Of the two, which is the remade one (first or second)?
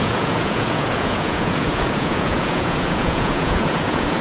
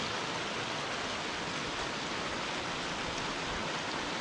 first